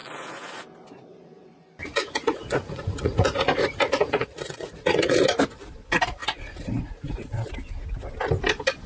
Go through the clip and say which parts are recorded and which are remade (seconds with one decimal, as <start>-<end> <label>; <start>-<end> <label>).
0.0-0.6 remade; 0.6-1.8 recorded; 1.8-5.2 remade; 5.2-6.2 recorded; 6.2-7.5 remade; 7.5-8.9 recorded